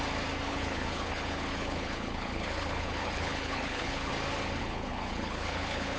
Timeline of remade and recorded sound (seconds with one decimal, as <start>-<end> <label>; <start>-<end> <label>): 0.0-0.5 recorded; 0.5-4.1 remade; 4.1-4.6 recorded; 4.6-6.0 remade